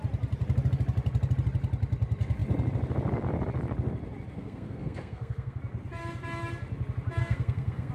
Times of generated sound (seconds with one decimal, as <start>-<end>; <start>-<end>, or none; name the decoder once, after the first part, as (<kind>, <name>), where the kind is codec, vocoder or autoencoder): 4.3-5.6 (codec, SNAC); 7.2-7.9